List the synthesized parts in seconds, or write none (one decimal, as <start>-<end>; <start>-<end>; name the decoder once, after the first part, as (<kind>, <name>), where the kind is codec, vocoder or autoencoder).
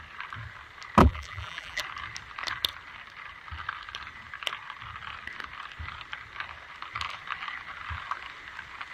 1.0-1.8 (vocoder, BigVGAN v2)